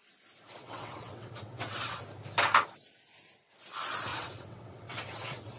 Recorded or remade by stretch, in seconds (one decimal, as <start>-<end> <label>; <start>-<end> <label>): 0.0-0.6 recorded; 0.6-2.0 remade; 2.0-4.1 recorded; 4.1-5.6 remade